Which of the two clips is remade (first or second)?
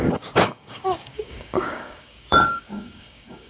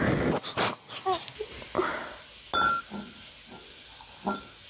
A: first